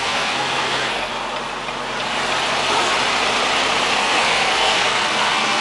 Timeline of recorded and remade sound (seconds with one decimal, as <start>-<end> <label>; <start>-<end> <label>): 0.0-1.1 remade; 1.1-4.0 recorded; 4.0-5.6 remade